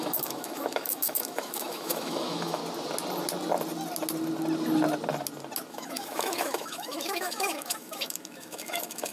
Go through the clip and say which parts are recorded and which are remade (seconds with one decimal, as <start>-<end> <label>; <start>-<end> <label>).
0.0-2.6 remade; 2.6-5.7 recorded; 5.7-9.1 remade